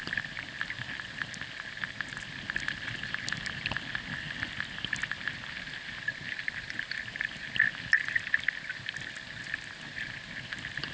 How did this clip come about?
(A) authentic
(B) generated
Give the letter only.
A